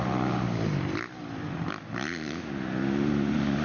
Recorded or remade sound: recorded